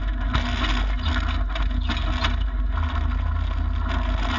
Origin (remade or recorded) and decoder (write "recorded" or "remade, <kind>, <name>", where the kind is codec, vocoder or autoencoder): recorded